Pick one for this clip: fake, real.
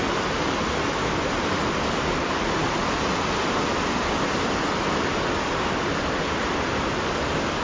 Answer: real